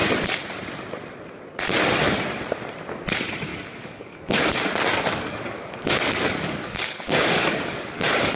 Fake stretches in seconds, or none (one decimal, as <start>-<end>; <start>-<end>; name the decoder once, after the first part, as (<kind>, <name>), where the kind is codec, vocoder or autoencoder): 3.5-4.5 (codec, DAC); 4.9-8.4